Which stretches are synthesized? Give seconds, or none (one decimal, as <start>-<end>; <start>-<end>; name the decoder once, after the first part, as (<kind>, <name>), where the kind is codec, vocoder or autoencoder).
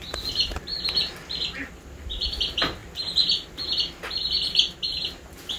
none